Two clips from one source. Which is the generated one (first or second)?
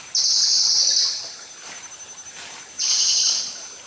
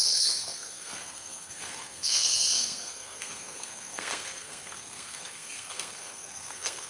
second